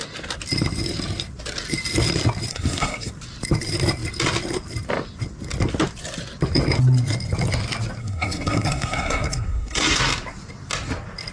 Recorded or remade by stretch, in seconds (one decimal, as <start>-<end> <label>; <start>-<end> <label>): 0.0-2.5 recorded; 2.5-3.1 remade; 3.1-8.0 recorded; 8.0-10.0 remade; 10.0-11.3 recorded